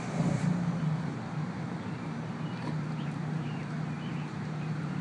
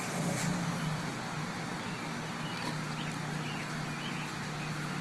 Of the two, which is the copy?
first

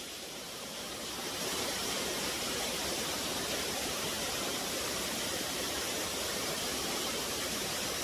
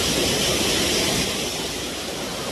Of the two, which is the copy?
first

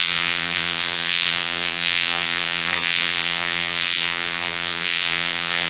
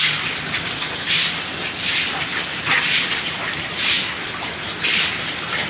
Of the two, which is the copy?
first